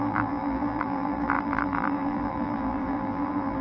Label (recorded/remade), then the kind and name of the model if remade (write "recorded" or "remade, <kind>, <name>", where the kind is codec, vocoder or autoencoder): remade, vocoder, BigVGAN v2